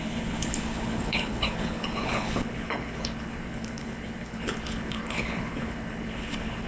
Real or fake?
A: fake